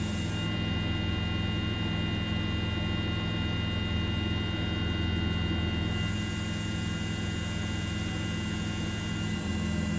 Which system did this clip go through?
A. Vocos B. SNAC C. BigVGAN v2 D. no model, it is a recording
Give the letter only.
D